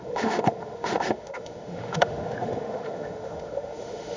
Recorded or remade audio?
remade